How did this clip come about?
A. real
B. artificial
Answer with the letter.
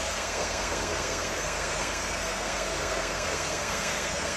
B